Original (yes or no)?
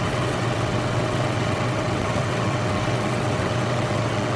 no